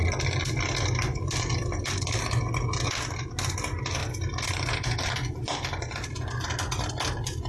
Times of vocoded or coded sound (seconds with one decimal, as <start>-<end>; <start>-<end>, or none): none